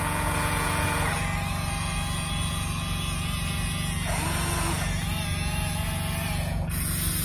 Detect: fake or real fake